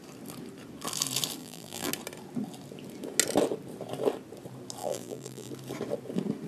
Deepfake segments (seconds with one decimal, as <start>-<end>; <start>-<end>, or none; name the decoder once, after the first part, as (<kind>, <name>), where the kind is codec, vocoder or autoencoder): 1.4-1.9 (vocoder, BigVGAN v2); 4.8-5.5